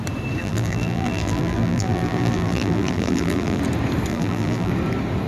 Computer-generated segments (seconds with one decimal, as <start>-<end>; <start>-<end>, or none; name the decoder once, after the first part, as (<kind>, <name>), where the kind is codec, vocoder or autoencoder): 0.4-3.6 (vocoder, BigVGAN v2); 4.1-4.7